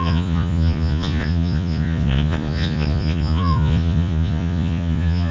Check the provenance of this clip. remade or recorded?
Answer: remade